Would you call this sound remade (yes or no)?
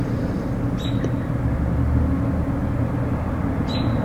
no